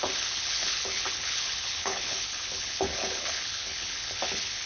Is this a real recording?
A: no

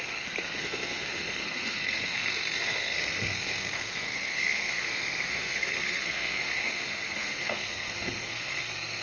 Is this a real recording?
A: no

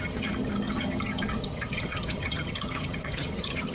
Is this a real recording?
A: no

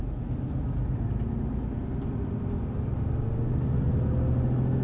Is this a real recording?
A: yes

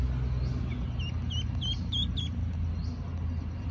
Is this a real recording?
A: yes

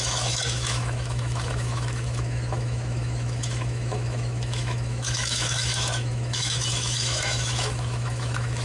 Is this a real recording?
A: no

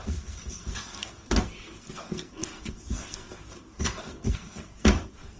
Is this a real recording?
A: no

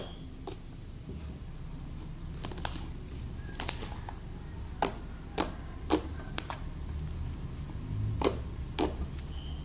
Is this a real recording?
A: yes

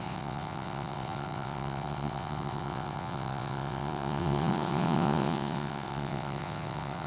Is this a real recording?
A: no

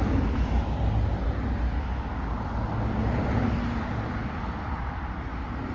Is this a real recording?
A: yes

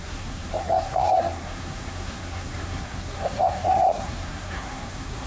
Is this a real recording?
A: no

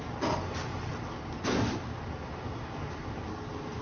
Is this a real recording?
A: yes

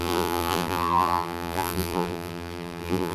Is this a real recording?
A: no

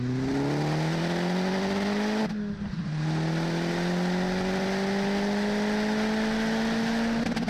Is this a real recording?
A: yes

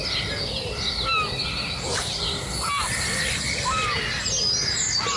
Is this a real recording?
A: yes